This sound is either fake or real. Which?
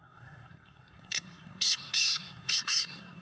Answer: fake